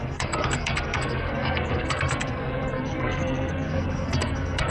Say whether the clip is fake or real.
fake